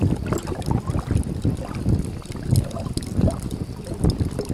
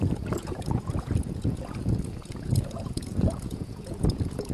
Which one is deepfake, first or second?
second